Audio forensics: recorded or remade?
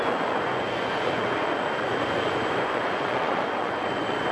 remade